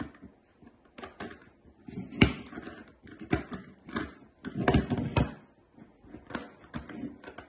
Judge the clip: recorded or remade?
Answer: recorded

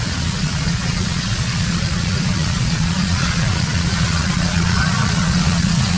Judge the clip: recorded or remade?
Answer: remade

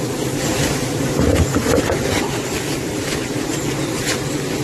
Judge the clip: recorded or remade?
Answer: recorded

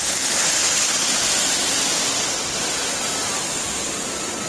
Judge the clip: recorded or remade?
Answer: recorded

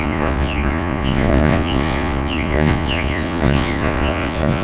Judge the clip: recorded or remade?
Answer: remade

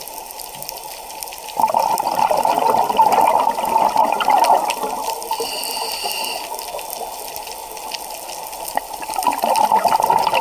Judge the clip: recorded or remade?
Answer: recorded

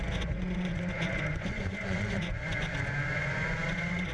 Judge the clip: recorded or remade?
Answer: remade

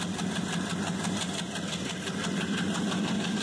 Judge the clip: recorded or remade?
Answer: recorded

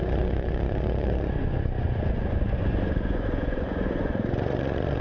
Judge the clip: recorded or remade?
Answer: remade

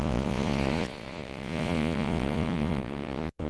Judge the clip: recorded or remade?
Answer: remade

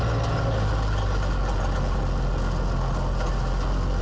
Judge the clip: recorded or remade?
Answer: recorded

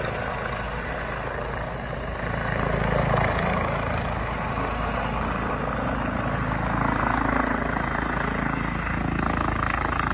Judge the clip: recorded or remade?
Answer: recorded